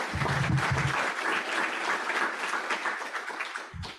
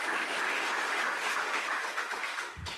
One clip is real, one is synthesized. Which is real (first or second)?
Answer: first